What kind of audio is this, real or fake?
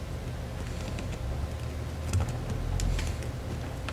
real